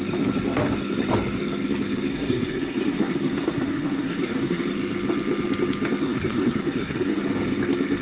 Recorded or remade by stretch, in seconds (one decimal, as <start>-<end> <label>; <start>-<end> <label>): 0.0-2.1 recorded; 2.1-4.6 remade; 4.6-6.0 recorded; 6.0-7.2 remade; 7.2-8.0 recorded